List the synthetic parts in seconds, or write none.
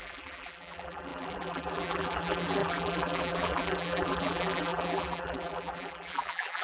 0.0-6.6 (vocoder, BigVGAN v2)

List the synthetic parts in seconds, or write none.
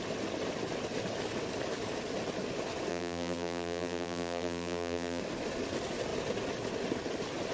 2.9-5.2 (vocoder, BigVGAN v2)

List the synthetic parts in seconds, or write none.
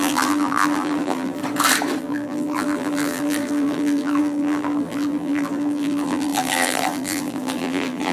0.0-1.4 (vocoder, BigVGAN v2); 2.0-8.1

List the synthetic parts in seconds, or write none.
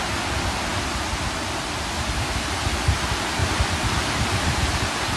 3.4-4.8 (vocoder, BigVGAN v2)